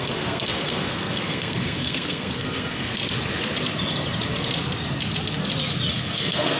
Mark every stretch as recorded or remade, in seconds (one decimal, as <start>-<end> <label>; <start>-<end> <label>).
0.0-3.0 remade; 3.0-5.9 recorded; 5.9-6.6 remade